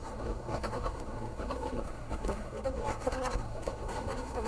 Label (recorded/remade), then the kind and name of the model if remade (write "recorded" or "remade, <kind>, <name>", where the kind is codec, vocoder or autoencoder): remade, codec, SNAC